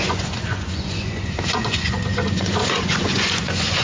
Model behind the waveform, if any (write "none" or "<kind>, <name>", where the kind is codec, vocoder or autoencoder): vocoder, Vocos